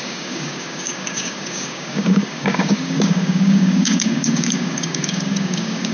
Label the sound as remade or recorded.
remade